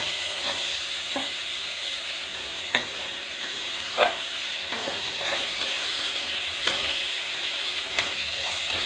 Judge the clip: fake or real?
fake